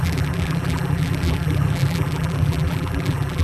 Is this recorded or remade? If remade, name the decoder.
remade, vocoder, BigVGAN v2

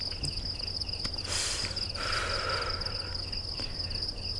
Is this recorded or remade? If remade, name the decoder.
recorded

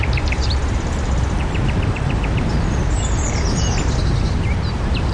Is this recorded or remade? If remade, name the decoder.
remade, vocoder, BigVGAN v2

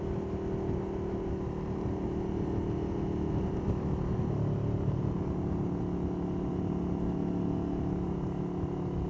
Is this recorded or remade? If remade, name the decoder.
recorded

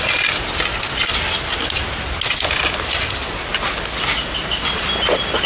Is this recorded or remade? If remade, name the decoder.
recorded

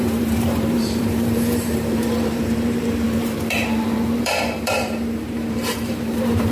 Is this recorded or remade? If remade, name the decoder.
remade, vocoder, BigVGAN v2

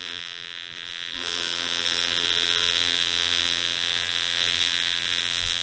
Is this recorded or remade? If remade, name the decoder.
remade, vocoder, BigVGAN v2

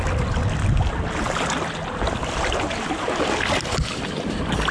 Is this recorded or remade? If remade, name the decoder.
recorded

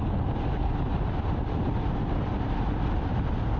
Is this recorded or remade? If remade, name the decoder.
recorded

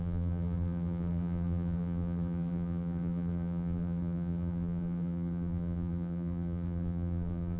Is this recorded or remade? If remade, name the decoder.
remade, vocoder, BigVGAN v2